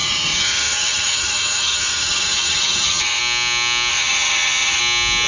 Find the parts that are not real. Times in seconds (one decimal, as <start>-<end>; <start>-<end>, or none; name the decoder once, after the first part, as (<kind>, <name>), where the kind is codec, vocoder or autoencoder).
0.0-3.2 (vocoder, HiFi-GAN); 3.9-4.8